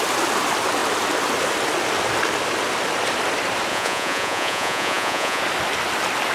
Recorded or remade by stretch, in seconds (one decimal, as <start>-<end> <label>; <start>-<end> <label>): 0.0-3.7 recorded; 3.7-5.4 remade; 5.4-6.3 recorded